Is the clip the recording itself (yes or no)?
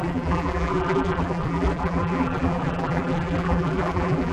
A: no